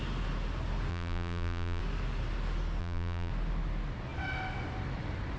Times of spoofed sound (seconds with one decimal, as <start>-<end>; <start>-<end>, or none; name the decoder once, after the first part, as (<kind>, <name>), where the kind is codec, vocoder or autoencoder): 0.9-1.8 (vocoder, BigVGAN v2); 2.8-3.3